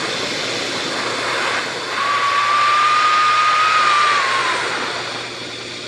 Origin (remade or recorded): recorded